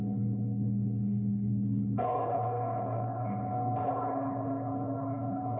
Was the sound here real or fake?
fake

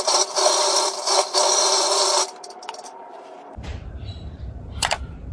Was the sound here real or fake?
fake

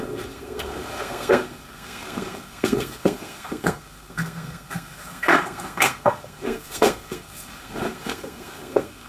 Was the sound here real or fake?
fake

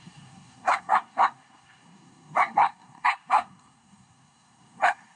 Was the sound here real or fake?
fake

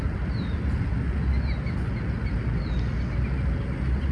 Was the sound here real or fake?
real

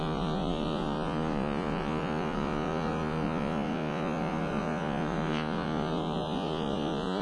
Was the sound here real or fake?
fake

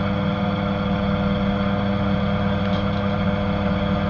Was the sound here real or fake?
real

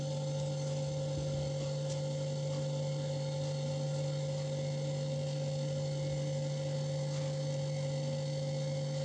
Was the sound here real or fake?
real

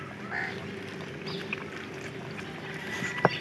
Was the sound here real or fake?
real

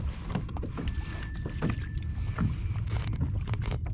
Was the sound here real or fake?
fake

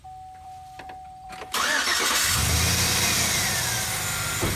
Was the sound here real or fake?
real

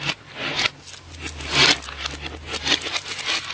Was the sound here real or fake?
real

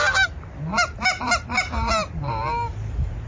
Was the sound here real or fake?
real